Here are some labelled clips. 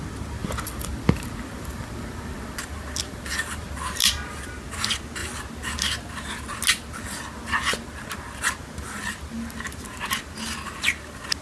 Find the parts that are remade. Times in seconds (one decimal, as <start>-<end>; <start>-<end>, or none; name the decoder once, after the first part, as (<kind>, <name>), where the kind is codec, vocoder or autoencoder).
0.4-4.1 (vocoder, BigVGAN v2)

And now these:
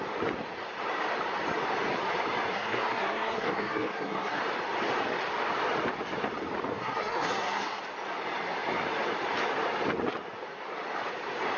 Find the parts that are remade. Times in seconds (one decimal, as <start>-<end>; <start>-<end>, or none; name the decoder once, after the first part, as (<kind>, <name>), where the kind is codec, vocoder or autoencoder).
2.5-4.4 (codec, SNAC); 6.7-7.8

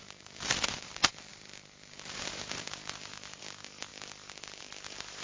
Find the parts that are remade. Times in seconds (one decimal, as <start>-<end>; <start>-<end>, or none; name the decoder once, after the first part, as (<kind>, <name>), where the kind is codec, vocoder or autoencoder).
0.0-5.2 (vocoder, BigVGAN v2)

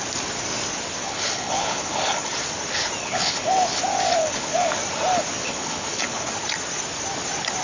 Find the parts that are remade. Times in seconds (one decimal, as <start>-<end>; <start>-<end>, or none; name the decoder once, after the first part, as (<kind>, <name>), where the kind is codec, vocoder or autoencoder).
1.0-2.3 (codec, HILCodec); 3.0-3.8; 4.2-4.7; 5.4-6.3

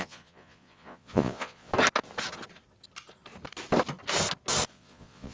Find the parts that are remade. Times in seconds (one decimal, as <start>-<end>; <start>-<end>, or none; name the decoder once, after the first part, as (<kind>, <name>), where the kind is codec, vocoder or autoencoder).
0.0-1.7 (vocoder, Vocos); 4.7-5.3